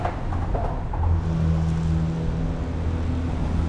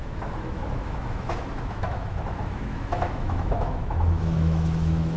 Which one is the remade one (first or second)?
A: second